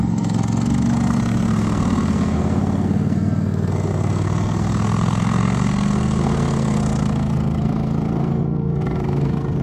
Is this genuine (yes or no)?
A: no